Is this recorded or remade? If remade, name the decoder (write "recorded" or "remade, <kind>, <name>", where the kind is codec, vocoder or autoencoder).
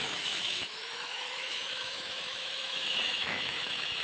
remade, autoencoder, DAC-VAE